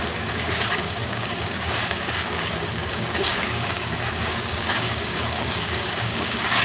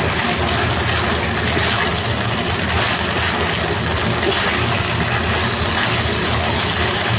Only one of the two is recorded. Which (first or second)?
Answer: second